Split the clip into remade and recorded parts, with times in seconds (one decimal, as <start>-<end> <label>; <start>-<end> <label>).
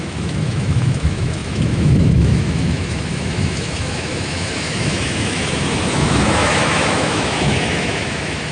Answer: 0.0-8.5 remade